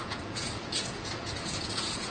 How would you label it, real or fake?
fake